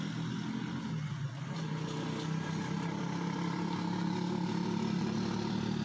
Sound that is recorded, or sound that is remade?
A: recorded